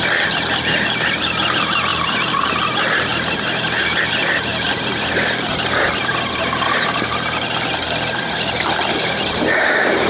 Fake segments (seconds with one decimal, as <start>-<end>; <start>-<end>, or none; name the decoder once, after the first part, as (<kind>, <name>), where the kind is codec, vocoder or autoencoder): none